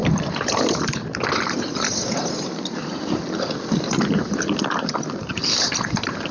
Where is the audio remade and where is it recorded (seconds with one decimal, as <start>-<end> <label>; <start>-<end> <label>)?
0.0-2.3 recorded; 2.3-2.8 remade; 2.8-3.9 recorded; 3.9-6.3 remade